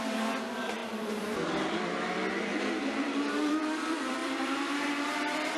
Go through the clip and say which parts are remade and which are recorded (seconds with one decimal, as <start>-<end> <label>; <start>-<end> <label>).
0.0-5.6 remade